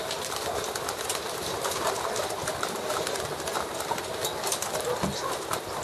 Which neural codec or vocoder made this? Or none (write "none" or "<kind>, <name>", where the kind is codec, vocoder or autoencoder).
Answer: none